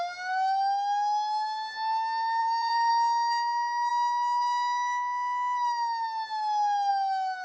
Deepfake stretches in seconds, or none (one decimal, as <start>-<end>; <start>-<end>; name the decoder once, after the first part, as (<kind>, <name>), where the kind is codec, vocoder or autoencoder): 2.4-2.9 (vocoder, BigVGAN v2)